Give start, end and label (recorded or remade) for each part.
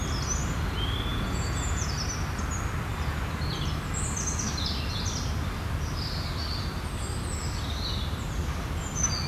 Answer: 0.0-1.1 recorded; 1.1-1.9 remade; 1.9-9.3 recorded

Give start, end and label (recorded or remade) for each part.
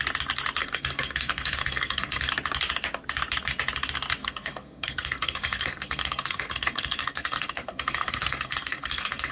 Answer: 0.0-0.6 recorded; 0.6-2.3 remade; 2.3-4.2 recorded; 4.2-9.3 remade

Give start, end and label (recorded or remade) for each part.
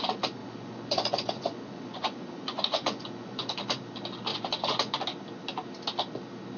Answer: 0.0-0.4 recorded; 0.4-3.5 remade; 3.5-4.3 recorded; 4.3-5.0 remade; 5.0-6.6 recorded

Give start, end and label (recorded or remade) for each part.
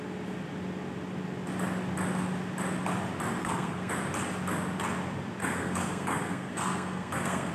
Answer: 0.0-3.4 recorded; 3.4-3.9 remade; 3.9-5.4 recorded; 5.4-7.5 remade